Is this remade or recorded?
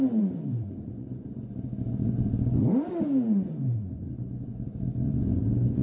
remade